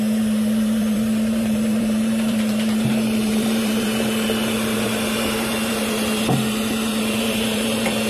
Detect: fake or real fake